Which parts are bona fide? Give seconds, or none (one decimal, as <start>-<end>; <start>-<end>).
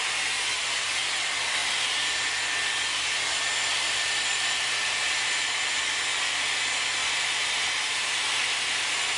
0.0-3.7; 5.6-7.0; 8.1-9.2